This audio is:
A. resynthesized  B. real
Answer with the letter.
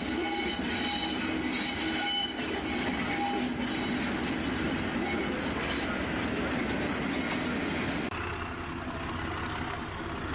B